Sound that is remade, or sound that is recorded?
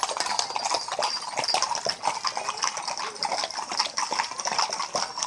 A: recorded